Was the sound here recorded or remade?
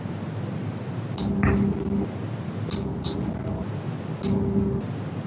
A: recorded